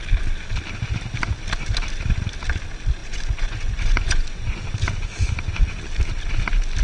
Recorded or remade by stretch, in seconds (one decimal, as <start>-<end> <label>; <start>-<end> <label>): 0.0-3.0 recorded; 3.0-4.6 remade; 4.6-6.8 recorded